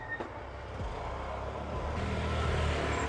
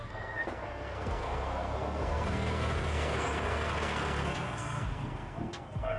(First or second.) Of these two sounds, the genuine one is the first